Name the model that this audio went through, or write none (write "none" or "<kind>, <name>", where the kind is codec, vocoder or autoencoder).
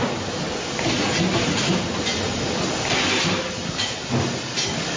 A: none